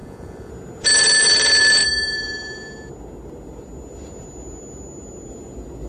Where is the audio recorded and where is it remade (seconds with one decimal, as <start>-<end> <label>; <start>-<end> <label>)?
0.0-0.5 remade; 0.5-5.9 recorded